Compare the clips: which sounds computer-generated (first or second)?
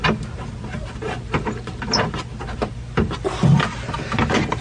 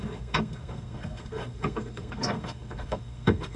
second